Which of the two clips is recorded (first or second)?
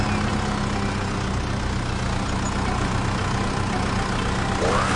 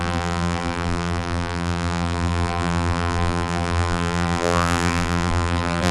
first